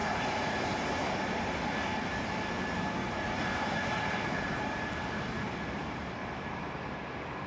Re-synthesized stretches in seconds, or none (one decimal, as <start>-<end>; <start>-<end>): 0.0-0.7; 3.0-4.9